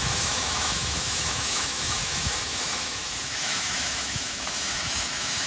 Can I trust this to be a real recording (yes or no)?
no